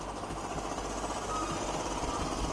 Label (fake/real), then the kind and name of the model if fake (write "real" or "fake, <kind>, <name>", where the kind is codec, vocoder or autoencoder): real